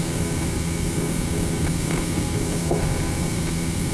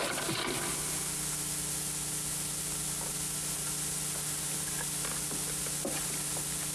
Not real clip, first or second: first